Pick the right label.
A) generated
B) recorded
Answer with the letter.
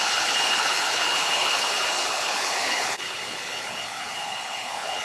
A